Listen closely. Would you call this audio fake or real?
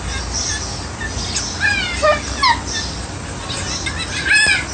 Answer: real